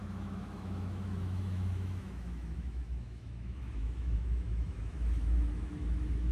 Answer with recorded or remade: remade